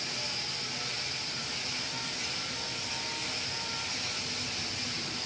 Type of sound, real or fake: real